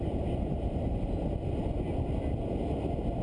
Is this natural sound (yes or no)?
yes